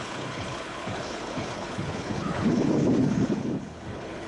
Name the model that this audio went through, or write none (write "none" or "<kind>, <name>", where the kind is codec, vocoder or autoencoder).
codec, HILCodec